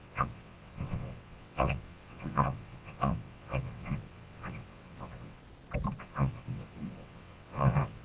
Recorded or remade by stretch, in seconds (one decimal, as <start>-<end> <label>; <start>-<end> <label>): 0.0-5.4 remade; 5.4-6.0 recorded; 6.0-8.0 remade